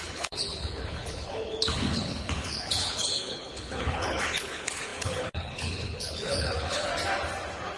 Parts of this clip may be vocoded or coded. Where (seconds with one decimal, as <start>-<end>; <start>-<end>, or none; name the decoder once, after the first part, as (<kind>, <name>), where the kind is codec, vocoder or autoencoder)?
0.0-6.9 (codec, HILCodec)